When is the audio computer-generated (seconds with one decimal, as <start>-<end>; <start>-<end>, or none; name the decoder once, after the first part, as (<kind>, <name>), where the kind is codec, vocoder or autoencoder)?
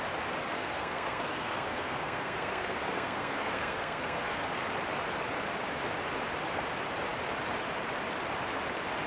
0.5-4.5 (codec, SNAC)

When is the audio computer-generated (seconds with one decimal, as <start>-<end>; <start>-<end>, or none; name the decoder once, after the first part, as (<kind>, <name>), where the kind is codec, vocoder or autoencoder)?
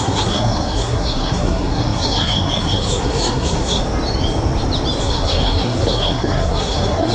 0.0-3.8 (codec, SNAC); 5.0-7.1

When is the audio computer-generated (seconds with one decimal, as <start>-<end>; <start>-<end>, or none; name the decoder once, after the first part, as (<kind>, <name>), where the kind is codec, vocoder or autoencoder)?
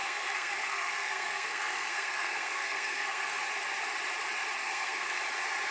0.0-3.4 (codec, SNAC); 4.6-5.2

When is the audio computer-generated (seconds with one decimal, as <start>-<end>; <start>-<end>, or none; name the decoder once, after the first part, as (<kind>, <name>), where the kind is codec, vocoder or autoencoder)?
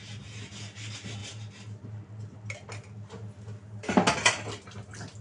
none